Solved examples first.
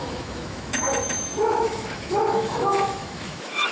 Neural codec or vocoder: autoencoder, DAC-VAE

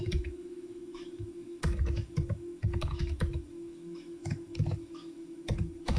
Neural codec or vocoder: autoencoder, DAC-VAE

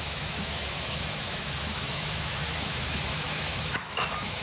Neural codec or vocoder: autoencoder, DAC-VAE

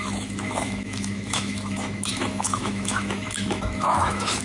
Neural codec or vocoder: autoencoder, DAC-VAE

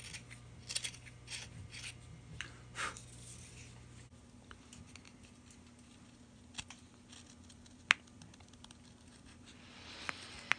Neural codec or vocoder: none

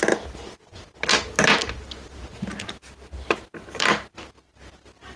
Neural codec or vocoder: none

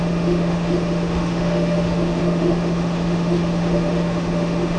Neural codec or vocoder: autoencoder, DAC-VAE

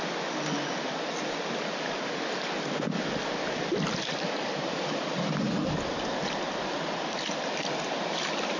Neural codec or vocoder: none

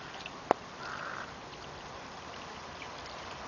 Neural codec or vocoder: none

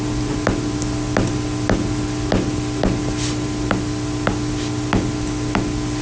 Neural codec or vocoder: none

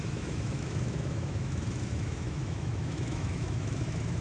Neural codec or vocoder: autoencoder, DAC-VAE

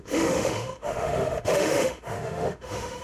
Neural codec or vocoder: autoencoder, DAC-VAE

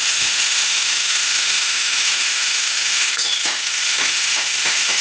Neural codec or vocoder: autoencoder, DAC-VAE